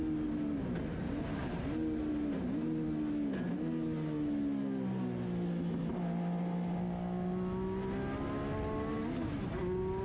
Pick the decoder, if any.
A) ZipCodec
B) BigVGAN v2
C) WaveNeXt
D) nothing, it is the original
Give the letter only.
D